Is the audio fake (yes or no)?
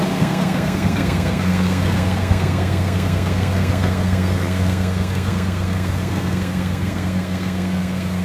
yes